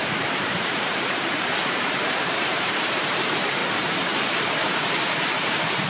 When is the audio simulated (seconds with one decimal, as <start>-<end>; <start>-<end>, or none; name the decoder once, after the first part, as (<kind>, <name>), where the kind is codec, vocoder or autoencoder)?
0.0-3.6 (vocoder, BigVGAN v2); 4.3-5.9